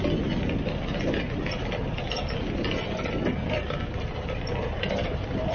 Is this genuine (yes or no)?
yes